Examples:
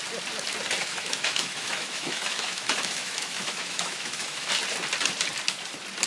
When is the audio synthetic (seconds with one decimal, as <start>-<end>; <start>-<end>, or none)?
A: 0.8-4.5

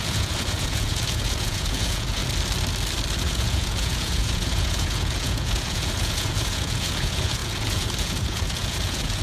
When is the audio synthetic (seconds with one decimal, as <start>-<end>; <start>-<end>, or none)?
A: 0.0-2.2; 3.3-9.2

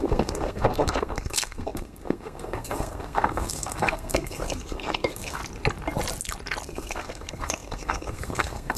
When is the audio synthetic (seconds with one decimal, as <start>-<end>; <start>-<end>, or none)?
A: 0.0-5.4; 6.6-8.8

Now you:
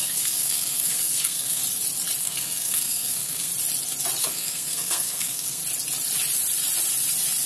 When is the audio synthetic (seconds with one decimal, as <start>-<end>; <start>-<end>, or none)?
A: 0.0-1.6; 2.2-3.5; 4.2-5.6

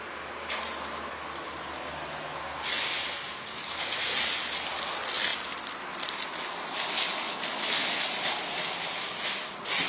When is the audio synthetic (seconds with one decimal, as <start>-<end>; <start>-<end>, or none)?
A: none

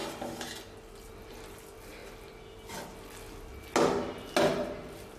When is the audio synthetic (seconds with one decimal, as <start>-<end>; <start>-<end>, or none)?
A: none

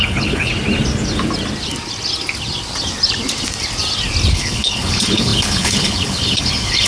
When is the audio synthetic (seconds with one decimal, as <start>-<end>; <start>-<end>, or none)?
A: 0.0-0.5; 4.3-6.9